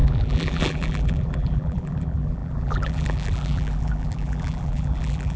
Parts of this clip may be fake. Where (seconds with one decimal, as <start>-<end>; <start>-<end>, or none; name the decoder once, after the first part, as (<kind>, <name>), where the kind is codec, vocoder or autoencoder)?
0.0-5.4 (vocoder, BigVGAN v2)